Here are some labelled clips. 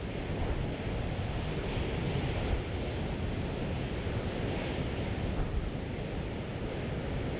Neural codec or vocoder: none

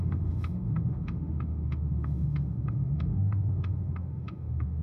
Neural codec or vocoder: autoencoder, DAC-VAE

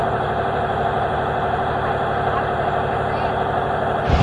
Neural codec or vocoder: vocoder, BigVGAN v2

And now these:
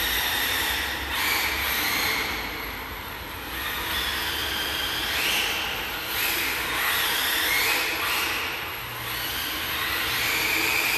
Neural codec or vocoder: none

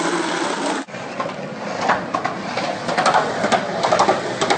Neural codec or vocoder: none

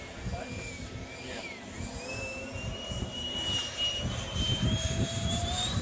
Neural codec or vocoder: vocoder, BigVGAN v2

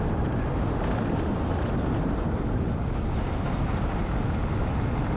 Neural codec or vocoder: none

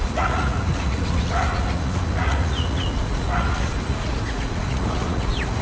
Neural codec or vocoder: vocoder, Vocos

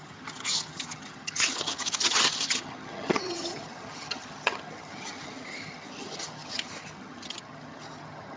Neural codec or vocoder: vocoder, HiFi-GAN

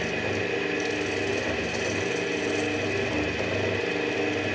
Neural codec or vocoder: none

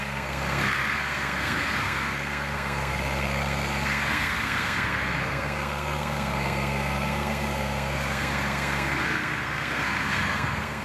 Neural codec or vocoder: codec, SNAC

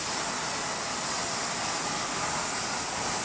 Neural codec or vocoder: none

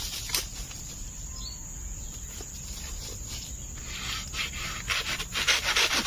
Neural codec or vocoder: none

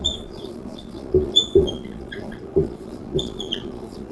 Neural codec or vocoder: vocoder, Vocos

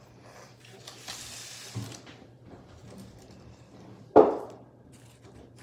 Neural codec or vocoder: none